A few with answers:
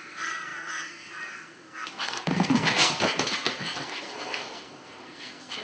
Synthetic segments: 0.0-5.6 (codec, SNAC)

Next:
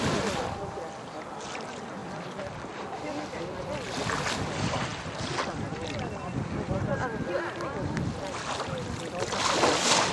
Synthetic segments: none

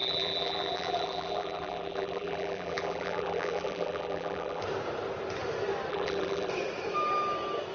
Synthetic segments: 0.0-4.6 (vocoder, BigVGAN v2); 5.9-6.5

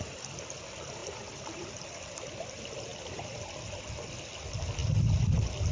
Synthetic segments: none

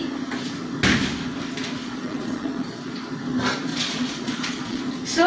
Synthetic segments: 1.8-2.9 (vocoder, Vocos); 3.7-4.8